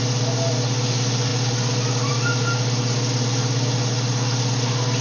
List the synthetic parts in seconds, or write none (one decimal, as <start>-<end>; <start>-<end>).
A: none